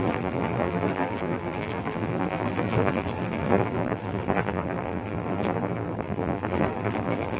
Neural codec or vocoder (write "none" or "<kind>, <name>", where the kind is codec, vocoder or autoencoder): vocoder, BigVGAN v2